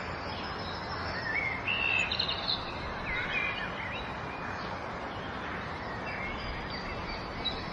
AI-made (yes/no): no